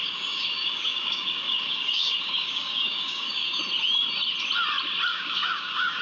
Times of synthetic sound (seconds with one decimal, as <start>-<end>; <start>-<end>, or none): 0.0-3.6; 5.1-6.0